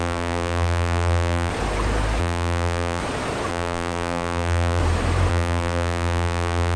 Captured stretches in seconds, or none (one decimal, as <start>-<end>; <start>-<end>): 1.5-2.2; 3.0-3.5; 4.8-5.3